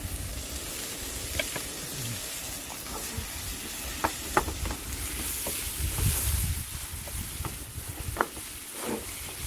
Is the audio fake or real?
real